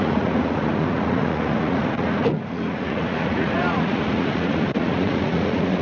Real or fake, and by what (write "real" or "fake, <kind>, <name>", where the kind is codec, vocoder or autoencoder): fake, vocoder, Vocos